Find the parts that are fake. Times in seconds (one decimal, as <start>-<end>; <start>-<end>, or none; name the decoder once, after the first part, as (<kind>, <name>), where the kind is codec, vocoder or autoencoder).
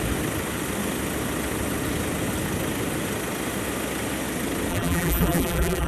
4.7-5.9 (vocoder, BigVGAN v2)